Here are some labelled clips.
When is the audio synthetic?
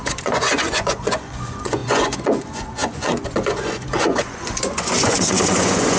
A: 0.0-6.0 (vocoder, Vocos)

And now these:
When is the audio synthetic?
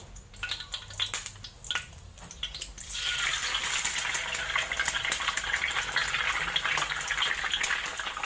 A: none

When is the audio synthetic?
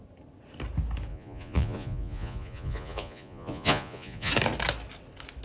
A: 1.1-4.3 (vocoder, Vocos)